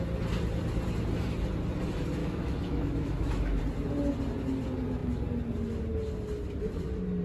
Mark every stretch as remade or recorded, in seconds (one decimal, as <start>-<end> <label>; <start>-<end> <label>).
0.0-2.2 recorded; 2.2-3.6 remade; 3.6-7.2 recorded